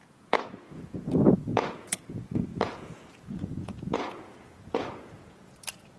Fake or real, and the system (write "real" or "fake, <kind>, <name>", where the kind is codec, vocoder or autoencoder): fake, vocoder, Vocos